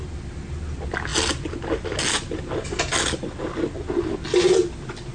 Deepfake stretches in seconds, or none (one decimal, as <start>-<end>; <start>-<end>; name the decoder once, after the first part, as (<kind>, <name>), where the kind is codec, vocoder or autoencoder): none

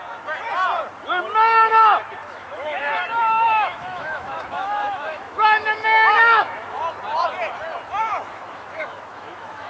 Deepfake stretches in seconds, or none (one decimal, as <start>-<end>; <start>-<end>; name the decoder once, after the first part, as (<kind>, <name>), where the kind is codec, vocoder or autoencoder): 2.2-6.8 (autoencoder, DAC-VAE); 8.0-9.7

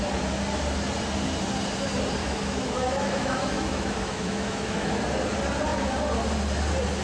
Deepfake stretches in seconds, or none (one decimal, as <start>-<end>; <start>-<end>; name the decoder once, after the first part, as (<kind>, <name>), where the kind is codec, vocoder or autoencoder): 2.2-5.0 (autoencoder, DAC-VAE)

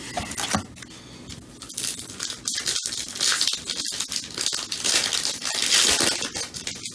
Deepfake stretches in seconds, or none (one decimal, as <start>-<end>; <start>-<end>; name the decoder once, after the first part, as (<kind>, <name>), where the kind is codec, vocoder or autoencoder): none

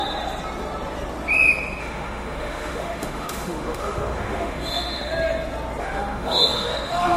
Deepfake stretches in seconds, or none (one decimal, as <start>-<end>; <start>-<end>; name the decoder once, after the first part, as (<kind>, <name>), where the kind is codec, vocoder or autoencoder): 1.8-5.1 (autoencoder, DAC-VAE); 5.8-7.2